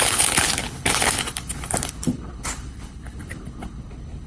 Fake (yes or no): yes